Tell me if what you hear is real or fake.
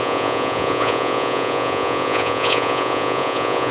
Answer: fake